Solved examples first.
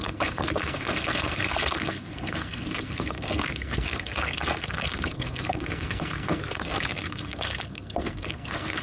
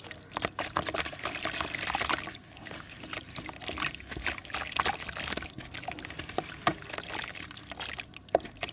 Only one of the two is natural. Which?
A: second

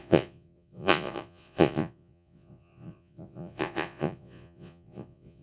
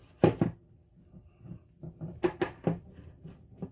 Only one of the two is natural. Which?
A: second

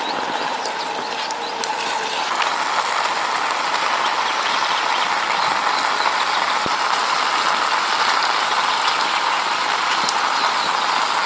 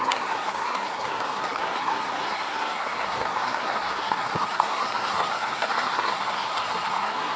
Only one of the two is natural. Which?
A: first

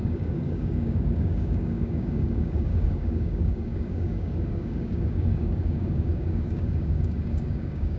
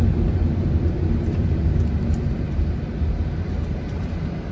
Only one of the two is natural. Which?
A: second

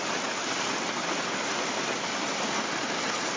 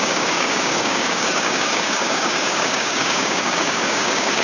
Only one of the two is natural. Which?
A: first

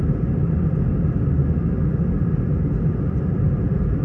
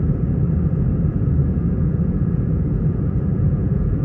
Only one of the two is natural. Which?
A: first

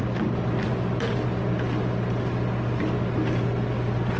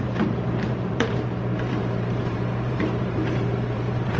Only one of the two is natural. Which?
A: first